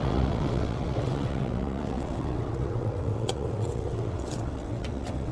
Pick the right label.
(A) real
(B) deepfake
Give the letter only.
B